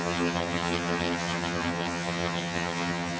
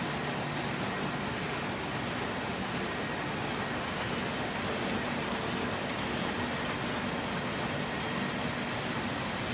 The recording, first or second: second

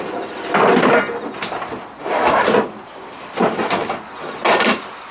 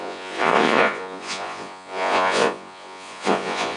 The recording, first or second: first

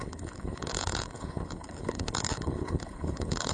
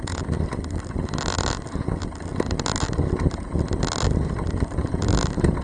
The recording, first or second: second